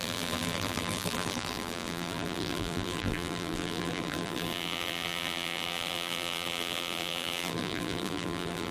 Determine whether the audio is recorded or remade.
remade